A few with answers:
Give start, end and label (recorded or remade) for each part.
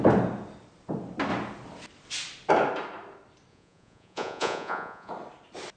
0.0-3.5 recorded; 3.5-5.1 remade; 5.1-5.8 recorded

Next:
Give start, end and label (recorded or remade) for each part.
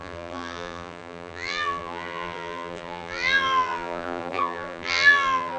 0.0-5.6 remade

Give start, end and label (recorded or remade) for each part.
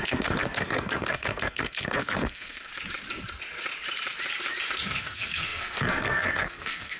0.0-2.7 remade; 2.7-5.0 recorded; 5.0-7.0 remade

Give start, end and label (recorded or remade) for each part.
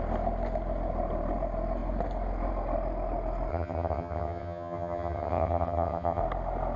0.0-3.5 recorded; 3.5-6.2 remade; 6.2-6.8 recorded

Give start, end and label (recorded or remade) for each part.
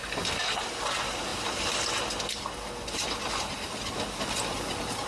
0.0-5.1 recorded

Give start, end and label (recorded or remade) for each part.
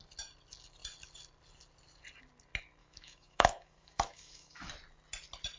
0.0-2.8 recorded; 2.8-4.7 remade; 4.7-5.6 recorded